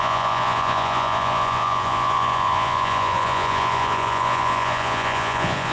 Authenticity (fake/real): fake